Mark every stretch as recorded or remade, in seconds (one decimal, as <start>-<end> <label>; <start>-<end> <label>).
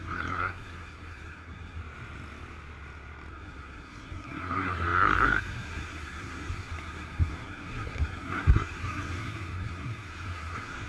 0.0-1.8 remade; 1.8-3.3 recorded; 3.3-10.9 remade